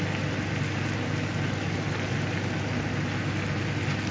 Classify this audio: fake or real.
real